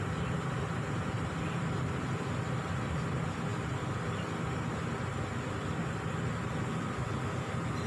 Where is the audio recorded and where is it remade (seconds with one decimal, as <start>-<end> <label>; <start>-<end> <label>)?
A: 0.0-3.5 remade; 3.5-5.5 recorded; 5.5-7.9 remade